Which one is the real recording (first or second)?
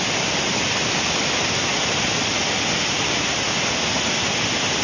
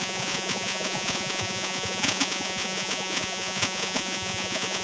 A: first